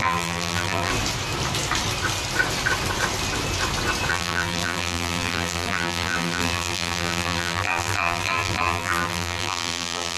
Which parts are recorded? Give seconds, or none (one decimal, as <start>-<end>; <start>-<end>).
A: 0.9-4.1